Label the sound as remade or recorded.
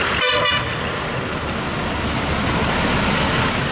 recorded